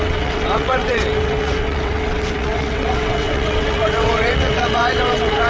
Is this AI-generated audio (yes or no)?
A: yes